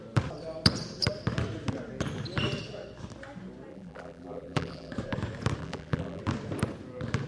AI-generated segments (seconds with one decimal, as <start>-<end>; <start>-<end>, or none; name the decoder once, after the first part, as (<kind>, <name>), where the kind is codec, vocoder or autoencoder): 3.7-4.9 (vocoder, BigVGAN v2); 5.6-6.2